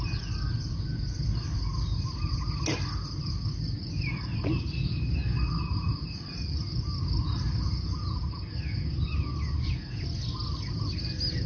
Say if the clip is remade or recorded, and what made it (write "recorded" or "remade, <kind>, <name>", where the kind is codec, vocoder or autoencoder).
recorded